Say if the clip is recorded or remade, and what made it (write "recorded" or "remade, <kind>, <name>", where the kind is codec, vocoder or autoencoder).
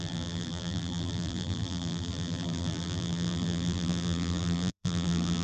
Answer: remade, vocoder, BigVGAN v2